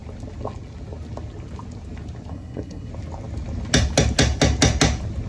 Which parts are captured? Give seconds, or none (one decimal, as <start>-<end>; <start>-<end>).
0.0-2.3; 2.9-5.3